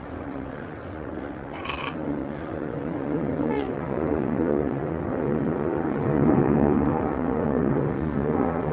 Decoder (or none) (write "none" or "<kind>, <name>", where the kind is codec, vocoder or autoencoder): vocoder, WaveNeXt